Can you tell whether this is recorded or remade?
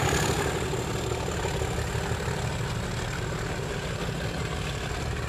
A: recorded